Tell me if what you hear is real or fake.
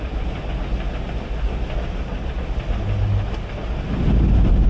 real